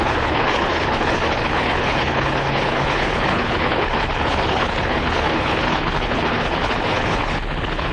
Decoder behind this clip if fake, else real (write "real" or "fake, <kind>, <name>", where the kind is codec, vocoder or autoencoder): fake, codec, HILCodec